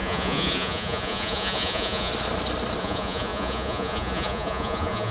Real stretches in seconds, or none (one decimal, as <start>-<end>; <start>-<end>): 2.1-2.8